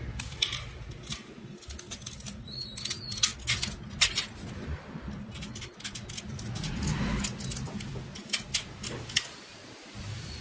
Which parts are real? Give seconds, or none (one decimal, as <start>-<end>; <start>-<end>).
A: 0.0-10.4